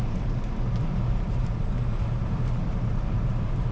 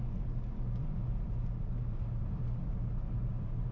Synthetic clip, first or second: first